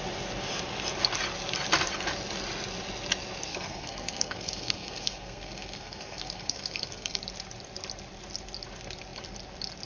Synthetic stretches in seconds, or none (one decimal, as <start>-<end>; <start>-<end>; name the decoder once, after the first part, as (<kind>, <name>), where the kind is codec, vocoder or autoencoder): 3.5-7.2 (codec, SNAC)